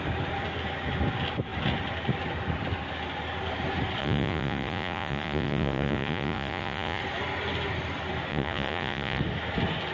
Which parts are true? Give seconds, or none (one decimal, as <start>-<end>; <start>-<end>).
0.0-4.0; 7.0-8.3; 9.2-9.9